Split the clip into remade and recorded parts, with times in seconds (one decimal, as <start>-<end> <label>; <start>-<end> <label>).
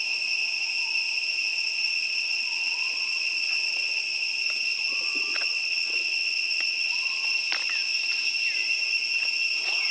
0.0-1.5 recorded; 1.5-4.0 remade; 4.0-4.9 recorded; 4.9-7.3 remade; 7.3-9.9 recorded